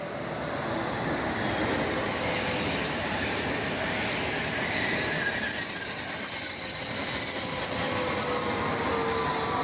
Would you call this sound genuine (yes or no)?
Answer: yes